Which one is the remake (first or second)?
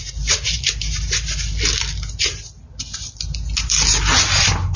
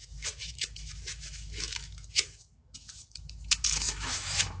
second